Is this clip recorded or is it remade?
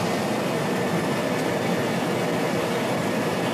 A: remade